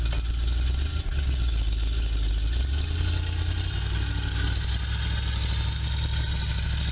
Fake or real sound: real